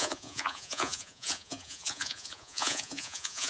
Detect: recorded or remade remade